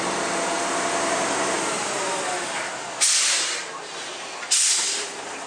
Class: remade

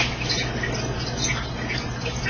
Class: recorded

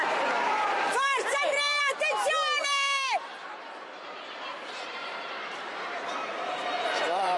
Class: remade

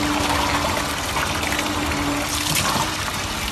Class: recorded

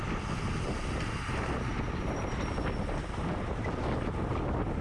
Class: recorded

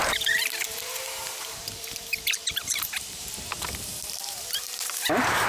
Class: remade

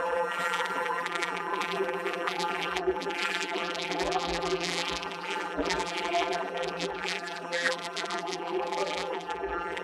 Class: remade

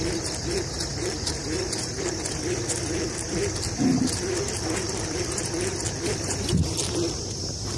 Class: remade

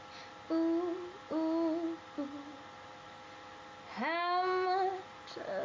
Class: recorded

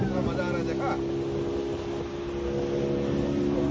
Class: recorded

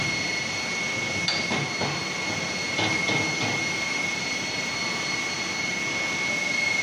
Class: recorded